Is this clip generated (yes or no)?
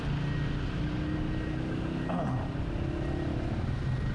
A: no